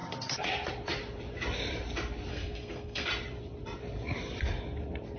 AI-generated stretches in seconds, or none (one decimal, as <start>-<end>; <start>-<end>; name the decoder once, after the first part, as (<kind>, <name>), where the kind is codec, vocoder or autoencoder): 2.3-3.1 (codec, SNAC)